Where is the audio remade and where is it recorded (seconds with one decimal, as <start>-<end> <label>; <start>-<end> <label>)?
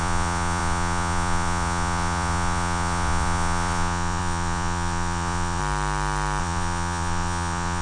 0.0-5.6 remade; 5.6-6.4 recorded; 6.4-7.8 remade